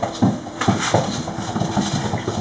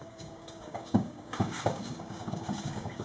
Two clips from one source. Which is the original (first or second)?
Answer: first